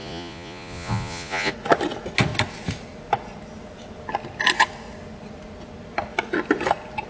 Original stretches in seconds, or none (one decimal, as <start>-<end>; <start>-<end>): 1.5-7.1